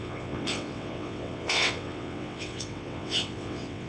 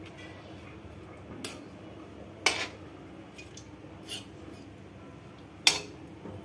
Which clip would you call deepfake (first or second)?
first